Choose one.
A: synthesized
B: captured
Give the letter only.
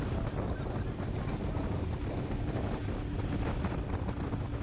B